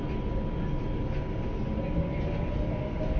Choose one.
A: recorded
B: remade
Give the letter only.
A